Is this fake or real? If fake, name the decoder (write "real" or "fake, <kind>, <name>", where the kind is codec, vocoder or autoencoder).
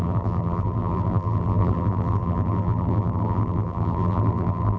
fake, vocoder, BigVGAN v2